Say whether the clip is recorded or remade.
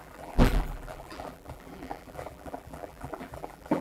remade